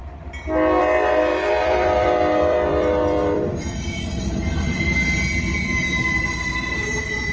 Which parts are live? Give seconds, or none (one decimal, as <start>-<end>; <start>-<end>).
0.0-1.3; 4.0-7.3